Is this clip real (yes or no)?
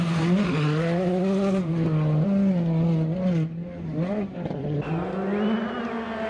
yes